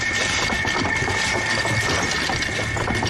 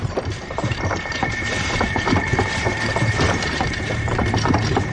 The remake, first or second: second